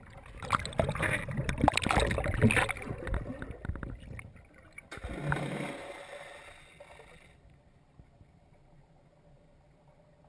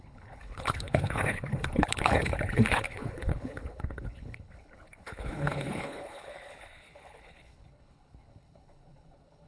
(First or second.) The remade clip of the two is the second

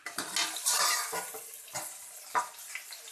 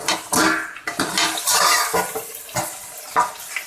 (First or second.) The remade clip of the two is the second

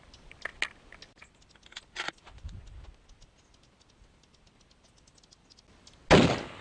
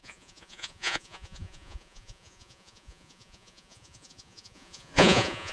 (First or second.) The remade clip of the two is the second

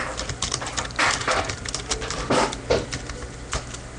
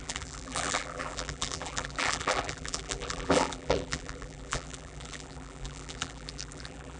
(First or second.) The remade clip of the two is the second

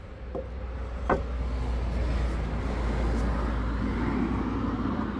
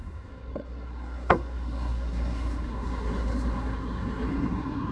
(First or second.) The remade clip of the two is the second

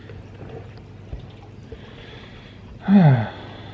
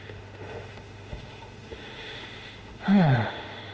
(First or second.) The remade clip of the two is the second